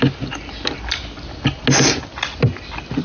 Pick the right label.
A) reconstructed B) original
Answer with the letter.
B